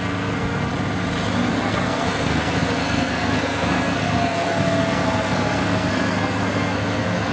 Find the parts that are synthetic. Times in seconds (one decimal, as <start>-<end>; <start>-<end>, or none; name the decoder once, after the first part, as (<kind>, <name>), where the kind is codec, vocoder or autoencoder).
0.0-0.7 (codec, SNAC); 1.5-7.3